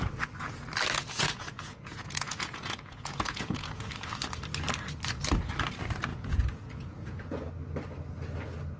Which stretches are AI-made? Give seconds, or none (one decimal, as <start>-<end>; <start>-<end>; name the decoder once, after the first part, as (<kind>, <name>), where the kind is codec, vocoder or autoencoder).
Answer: 1.0-3.9 (vocoder, Vocos); 6.1-7.5